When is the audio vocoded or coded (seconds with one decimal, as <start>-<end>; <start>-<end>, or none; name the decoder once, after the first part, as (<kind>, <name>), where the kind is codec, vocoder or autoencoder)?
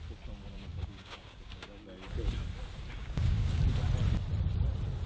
0.7-1.8 (codec, DAC); 3.0-3.6